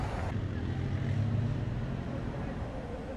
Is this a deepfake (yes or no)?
no